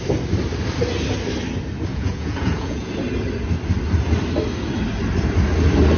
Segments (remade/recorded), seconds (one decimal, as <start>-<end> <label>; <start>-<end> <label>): 0.0-1.9 recorded; 1.9-2.9 remade; 2.9-6.0 recorded